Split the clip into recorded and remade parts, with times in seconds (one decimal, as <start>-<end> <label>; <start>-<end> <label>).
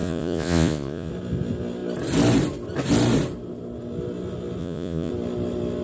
0.0-1.1 remade; 1.1-4.6 recorded; 4.6-5.1 remade; 5.1-5.8 recorded